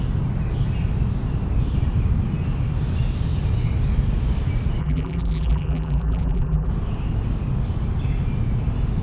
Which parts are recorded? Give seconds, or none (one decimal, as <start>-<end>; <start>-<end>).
0.0-4.8; 6.7-9.0